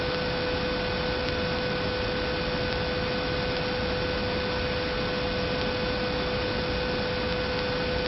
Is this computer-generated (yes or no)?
no